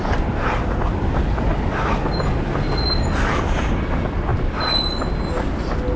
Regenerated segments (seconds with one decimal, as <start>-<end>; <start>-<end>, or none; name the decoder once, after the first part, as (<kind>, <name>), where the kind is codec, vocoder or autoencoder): none